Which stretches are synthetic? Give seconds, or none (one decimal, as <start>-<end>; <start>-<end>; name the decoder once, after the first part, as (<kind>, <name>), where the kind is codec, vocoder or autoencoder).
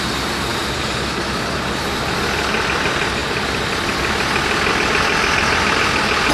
none